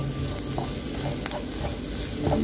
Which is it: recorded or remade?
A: recorded